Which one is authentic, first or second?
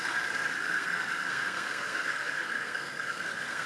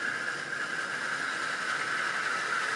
second